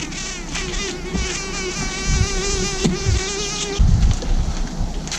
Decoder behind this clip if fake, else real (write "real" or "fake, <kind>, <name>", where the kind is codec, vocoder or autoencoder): real